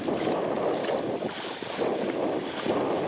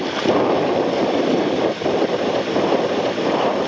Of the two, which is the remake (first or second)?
second